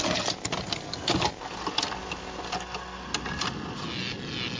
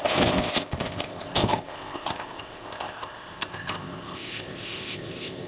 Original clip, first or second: first